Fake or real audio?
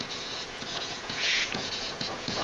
fake